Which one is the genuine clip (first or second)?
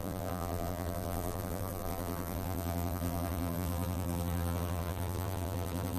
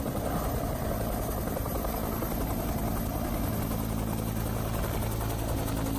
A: second